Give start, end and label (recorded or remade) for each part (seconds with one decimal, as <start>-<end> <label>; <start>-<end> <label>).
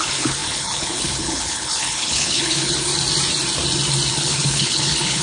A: 0.0-2.9 remade; 2.9-4.1 recorded; 4.1-5.2 remade